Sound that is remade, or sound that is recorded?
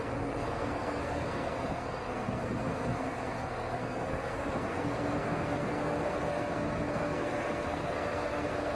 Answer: remade